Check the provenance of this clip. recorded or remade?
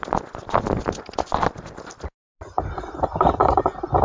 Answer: recorded